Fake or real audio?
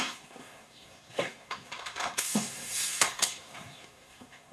fake